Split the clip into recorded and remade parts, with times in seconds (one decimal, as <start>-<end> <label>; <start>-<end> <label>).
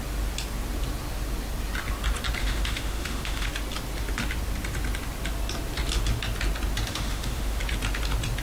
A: 0.0-2.4 recorded; 2.4-3.5 remade; 3.5-6.9 recorded; 6.9-7.6 remade; 7.6-8.4 recorded